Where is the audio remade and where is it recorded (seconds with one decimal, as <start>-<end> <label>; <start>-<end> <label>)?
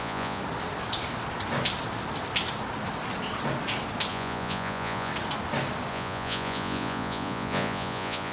0.0-0.4 remade; 0.4-4.1 recorded; 4.1-5.1 remade; 5.1-5.9 recorded; 5.9-8.3 remade